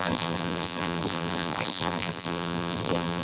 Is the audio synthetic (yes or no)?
yes